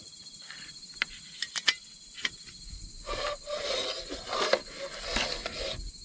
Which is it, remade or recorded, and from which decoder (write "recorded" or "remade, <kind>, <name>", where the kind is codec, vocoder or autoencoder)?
recorded